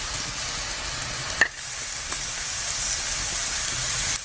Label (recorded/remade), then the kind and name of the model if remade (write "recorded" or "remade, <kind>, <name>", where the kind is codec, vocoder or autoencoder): recorded